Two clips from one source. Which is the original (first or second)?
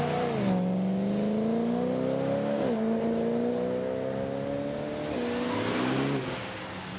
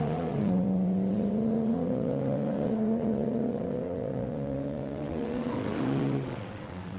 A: first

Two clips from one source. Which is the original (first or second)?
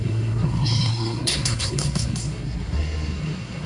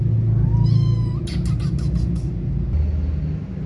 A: second